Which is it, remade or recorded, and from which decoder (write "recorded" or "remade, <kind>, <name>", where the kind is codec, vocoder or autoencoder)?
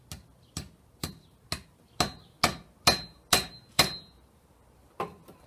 recorded